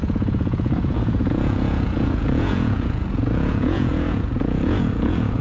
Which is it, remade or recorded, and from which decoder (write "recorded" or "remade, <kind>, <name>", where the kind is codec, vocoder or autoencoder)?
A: remade, vocoder, Vocos